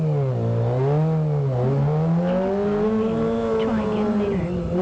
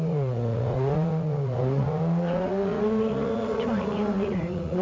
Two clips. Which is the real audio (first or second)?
first